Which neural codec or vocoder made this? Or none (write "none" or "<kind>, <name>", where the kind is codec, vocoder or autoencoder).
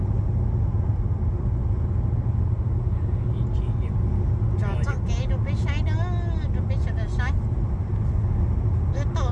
none